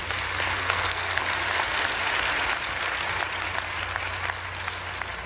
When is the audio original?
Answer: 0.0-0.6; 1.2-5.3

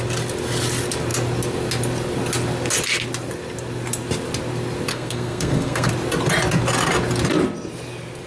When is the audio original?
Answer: 0.0-4.9; 5.9-8.3

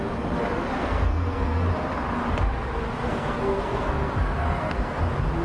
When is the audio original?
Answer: 0.0-0.8; 1.7-3.0; 5.0-5.4

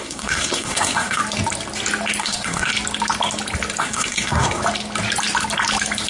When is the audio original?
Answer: 1.2-2.2; 2.7-3.8; 4.6-6.1